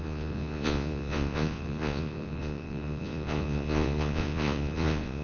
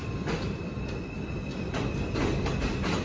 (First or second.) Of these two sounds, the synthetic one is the first